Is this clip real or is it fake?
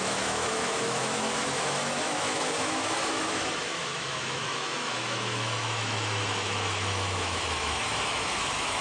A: fake